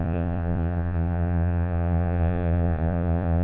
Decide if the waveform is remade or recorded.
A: remade